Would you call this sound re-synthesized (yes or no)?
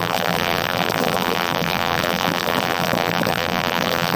yes